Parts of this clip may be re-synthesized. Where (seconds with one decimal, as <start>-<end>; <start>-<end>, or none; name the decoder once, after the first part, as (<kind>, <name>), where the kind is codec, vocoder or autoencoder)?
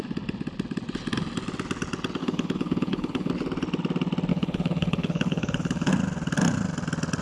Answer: 2.2-3.3 (codec, HILCodec); 4.3-5.9